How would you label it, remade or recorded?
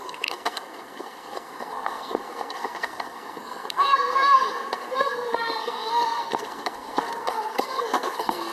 remade